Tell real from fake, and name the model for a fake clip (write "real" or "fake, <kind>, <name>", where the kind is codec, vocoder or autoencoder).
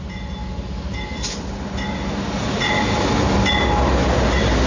real